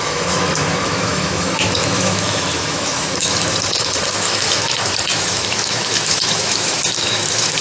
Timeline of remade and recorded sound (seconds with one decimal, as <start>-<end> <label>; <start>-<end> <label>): 0.0-7.6 remade